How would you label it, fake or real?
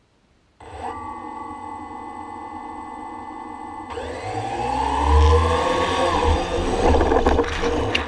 real